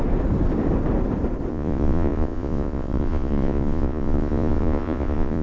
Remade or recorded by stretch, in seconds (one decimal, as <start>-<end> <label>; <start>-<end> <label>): 0.0-1.5 recorded; 1.5-5.4 remade